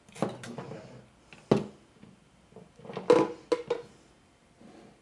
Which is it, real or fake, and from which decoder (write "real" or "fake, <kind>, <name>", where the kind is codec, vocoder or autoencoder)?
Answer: real